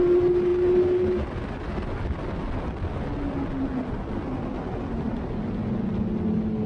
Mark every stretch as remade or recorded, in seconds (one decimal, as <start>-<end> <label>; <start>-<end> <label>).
0.0-6.7 recorded